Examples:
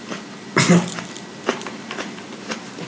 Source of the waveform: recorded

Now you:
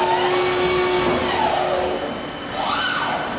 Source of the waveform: recorded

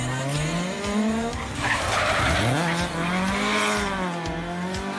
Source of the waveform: recorded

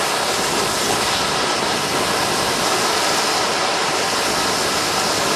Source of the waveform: recorded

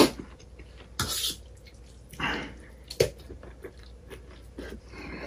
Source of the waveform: recorded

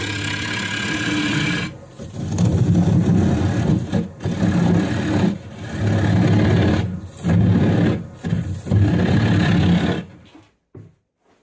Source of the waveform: recorded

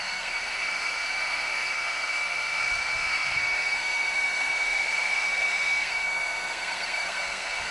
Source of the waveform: remade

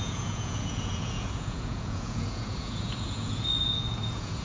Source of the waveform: remade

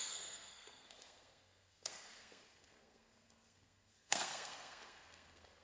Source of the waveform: remade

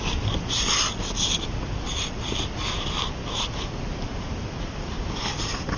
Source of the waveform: recorded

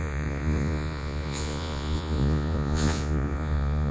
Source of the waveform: remade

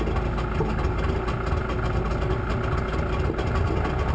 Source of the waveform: recorded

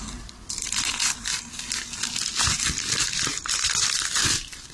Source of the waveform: recorded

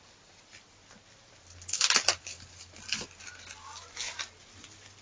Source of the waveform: recorded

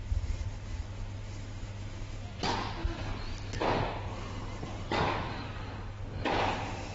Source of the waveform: recorded